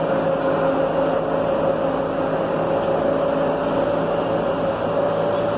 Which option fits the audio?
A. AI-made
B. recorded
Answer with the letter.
B